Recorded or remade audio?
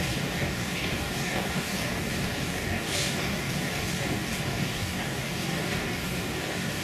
remade